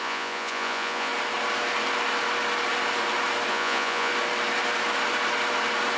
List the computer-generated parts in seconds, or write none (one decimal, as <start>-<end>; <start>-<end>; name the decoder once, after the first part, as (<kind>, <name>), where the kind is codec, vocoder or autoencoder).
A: 0.0-1.1 (vocoder, Vocos); 3.5-4.1